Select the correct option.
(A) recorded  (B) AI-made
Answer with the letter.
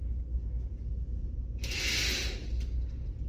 A